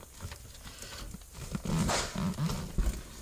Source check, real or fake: real